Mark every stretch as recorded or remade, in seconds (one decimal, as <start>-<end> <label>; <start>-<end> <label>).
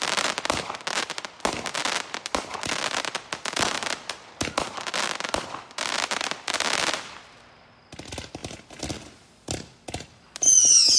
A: 0.0-11.0 recorded